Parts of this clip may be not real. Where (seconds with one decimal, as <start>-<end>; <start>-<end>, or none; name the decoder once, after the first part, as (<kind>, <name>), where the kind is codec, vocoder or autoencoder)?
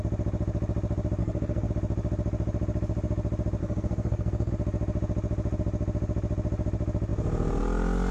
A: 1.2-1.7 (codec, SNAC); 3.6-4.5